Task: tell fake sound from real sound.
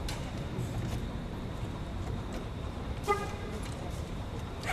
fake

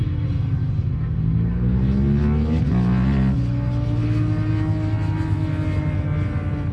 real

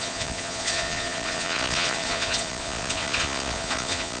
fake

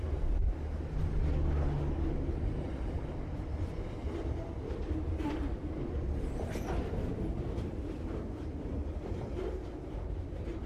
real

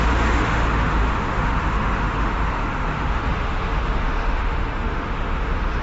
fake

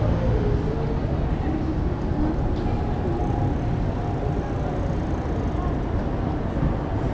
real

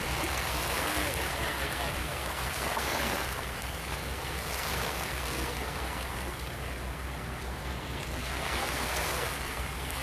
fake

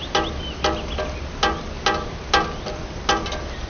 real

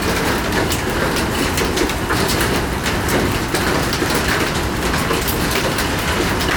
real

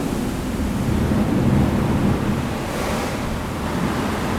real